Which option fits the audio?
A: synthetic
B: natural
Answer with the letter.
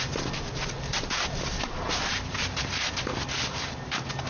B